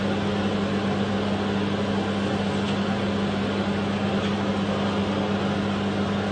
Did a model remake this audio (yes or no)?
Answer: no